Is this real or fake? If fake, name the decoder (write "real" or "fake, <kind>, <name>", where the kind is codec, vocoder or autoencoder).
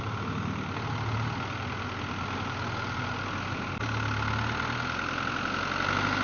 real